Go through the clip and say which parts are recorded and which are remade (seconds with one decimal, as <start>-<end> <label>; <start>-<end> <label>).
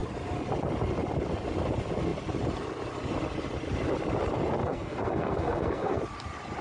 0.0-4.6 recorded; 4.6-6.0 remade; 6.0-6.6 recorded